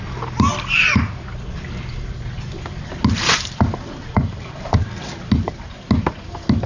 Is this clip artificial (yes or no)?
no